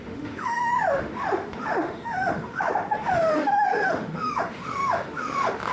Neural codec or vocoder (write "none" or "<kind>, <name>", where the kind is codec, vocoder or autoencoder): autoencoder, DAC-VAE